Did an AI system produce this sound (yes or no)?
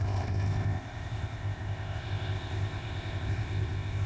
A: yes